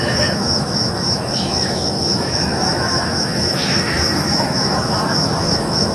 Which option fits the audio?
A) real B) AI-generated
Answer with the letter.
B